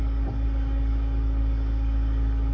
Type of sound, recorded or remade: remade